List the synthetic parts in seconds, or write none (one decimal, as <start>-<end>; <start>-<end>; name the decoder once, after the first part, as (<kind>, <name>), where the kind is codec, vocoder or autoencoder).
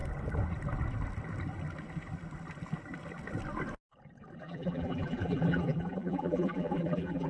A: 4.4-7.3 (vocoder, BigVGAN v2)